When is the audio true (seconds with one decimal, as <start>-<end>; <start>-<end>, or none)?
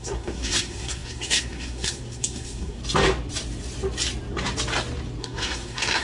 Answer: 2.8-5.2